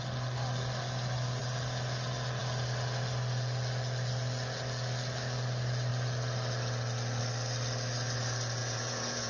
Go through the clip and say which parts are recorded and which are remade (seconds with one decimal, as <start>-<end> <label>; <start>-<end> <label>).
0.0-8.6 recorded; 8.6-9.3 remade

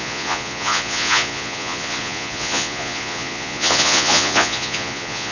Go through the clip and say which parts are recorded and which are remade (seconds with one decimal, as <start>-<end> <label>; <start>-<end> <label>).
0.0-5.3 remade

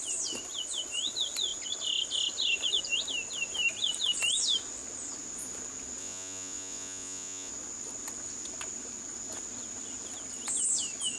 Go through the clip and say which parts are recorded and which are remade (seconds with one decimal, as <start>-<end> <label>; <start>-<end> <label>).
0.0-6.0 recorded; 6.0-7.5 remade; 7.5-11.2 recorded

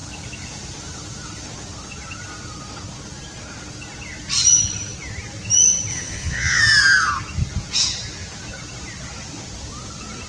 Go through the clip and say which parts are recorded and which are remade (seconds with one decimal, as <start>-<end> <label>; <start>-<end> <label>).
0.0-5.9 recorded; 5.9-6.6 remade; 6.6-10.3 recorded

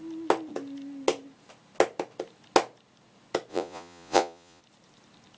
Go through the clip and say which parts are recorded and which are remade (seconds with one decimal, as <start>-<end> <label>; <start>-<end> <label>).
0.0-3.5 recorded; 3.5-4.6 remade; 4.6-5.4 recorded